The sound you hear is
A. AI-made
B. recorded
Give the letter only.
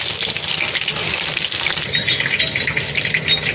B